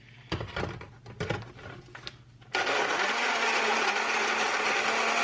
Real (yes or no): yes